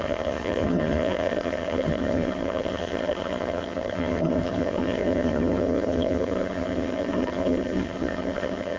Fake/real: fake